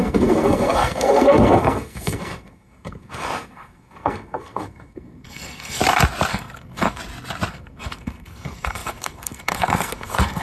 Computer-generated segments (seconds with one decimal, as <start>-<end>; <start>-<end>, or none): 0.0-5.8; 6.3-7.0; 7.5-10.4